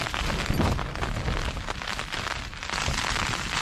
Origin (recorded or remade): recorded